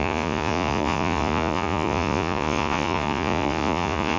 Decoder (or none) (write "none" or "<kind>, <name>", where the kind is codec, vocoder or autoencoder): vocoder, Vocos